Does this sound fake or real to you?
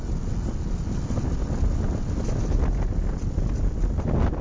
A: real